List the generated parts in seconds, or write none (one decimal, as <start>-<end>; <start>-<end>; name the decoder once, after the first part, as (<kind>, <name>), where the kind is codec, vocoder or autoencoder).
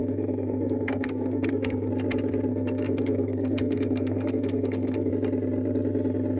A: 0.0-1.9 (codec, SNAC); 2.5-5.1